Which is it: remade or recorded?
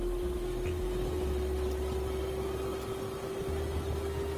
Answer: recorded